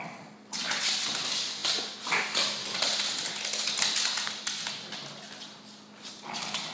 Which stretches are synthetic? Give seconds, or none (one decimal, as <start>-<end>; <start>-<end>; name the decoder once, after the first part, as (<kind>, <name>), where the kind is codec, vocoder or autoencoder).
none